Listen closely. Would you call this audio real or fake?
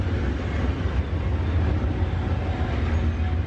real